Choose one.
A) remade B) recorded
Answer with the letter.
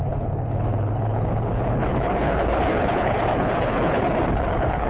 A